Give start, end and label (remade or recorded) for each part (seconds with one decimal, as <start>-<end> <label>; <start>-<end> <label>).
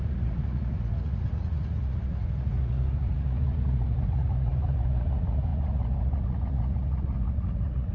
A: 0.0-7.9 remade